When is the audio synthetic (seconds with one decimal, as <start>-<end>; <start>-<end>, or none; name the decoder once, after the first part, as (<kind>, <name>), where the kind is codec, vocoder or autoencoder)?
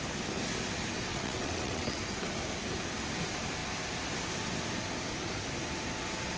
1.1-2.0 (vocoder, WaveNeXt)